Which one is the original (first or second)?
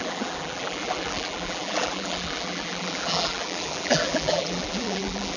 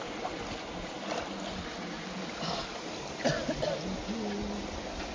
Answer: second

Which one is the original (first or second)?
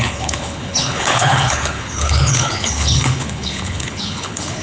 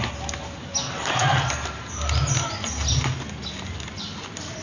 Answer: second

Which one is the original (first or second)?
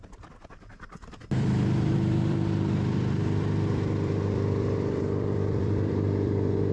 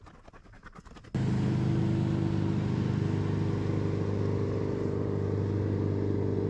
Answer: second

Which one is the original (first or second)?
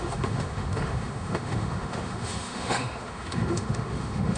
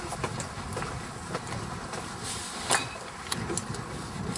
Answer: second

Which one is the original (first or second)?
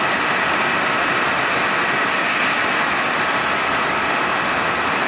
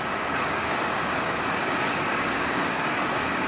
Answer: first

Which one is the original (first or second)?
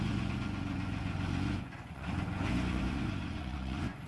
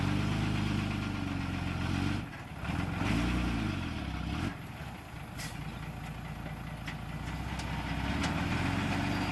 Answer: second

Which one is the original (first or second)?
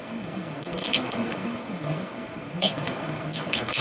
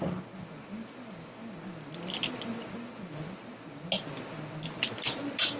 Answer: second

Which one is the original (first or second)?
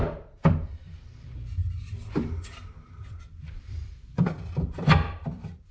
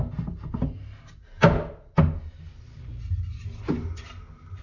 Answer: second